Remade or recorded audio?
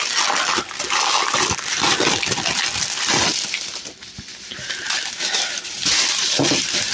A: recorded